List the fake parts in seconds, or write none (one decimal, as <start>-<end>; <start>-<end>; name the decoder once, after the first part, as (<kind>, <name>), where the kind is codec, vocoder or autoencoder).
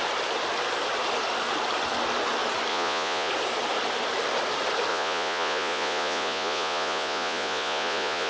2.7-3.3 (vocoder, Vocos); 4.9-8.3